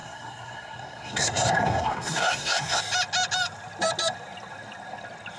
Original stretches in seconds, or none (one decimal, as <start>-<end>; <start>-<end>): 2.8-5.4